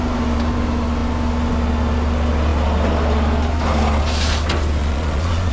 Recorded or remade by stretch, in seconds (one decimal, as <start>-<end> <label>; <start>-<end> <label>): 0.0-4.8 recorded; 4.8-5.5 remade